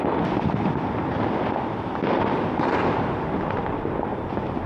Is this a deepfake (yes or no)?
yes